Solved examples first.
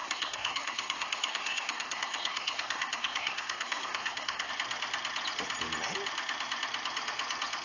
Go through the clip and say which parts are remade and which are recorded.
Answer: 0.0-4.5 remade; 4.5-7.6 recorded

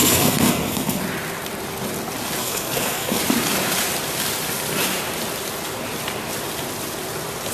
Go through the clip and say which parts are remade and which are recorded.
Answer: 0.0-1.0 remade; 1.0-2.4 recorded; 2.4-3.2 remade; 3.2-7.5 recorded

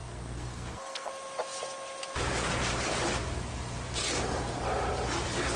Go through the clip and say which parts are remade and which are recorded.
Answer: 0.0-1.1 remade; 1.1-5.6 recorded

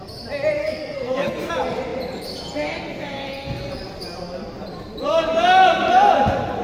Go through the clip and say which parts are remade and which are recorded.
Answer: 0.0-0.6 recorded; 0.6-1.5 remade; 1.5-6.6 recorded